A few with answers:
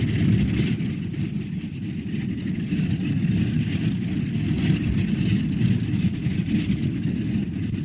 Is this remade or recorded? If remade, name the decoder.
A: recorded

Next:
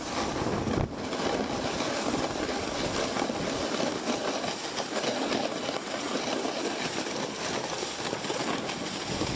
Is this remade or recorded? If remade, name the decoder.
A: recorded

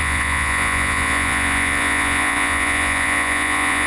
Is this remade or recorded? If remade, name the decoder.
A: remade, vocoder, Vocos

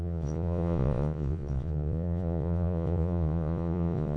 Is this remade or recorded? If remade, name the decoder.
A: remade, vocoder, Vocos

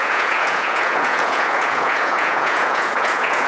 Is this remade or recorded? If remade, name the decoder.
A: remade, vocoder, Vocos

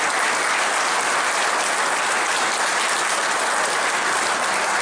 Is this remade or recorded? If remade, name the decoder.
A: recorded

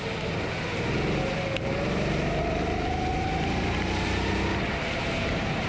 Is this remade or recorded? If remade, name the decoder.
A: recorded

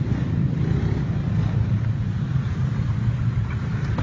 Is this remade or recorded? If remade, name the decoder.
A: recorded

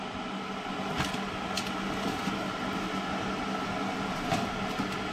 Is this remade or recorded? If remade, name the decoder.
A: recorded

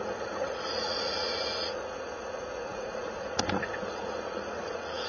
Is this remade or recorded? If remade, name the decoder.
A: remade, vocoder, Vocos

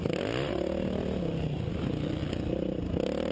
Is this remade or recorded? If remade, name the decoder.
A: recorded